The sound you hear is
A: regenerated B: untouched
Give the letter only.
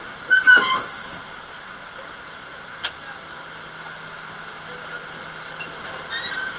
B